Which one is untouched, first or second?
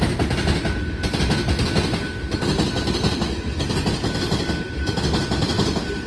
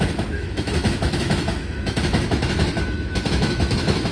first